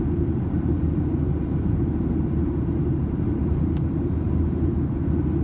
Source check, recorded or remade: remade